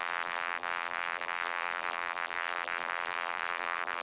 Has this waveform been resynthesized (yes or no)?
yes